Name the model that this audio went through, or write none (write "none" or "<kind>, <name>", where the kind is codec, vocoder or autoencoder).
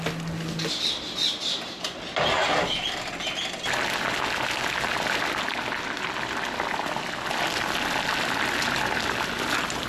none